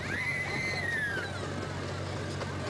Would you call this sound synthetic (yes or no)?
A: no